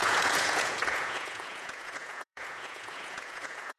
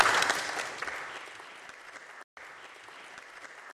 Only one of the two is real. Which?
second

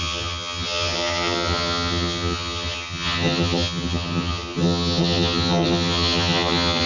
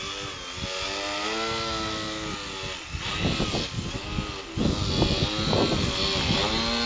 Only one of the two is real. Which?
second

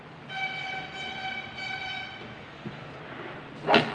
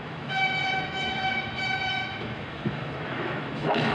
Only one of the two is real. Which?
first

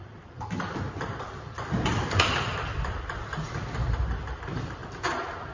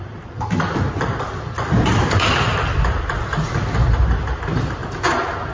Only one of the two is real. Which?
second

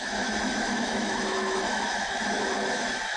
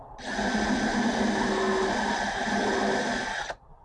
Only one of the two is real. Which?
second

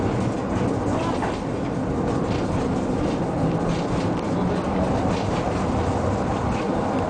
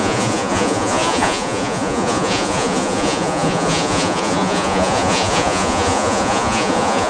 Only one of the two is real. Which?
first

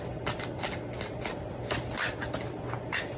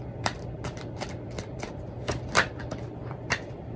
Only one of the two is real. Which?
first